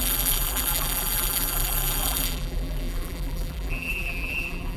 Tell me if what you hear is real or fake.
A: fake